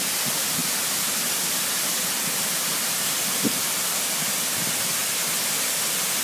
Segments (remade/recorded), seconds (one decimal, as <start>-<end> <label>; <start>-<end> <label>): 0.0-6.2 recorded

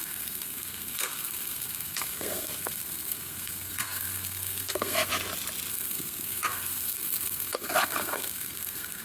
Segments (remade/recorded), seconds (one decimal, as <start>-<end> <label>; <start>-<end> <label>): 0.0-5.1 remade; 5.1-5.7 recorded; 5.7-9.0 remade